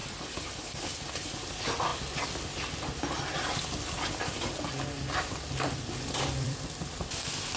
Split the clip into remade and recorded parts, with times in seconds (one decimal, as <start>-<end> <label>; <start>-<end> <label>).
0.0-1.9 remade; 1.9-5.1 recorded; 5.1-7.6 remade